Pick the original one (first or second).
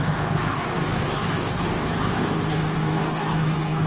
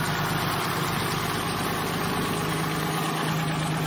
second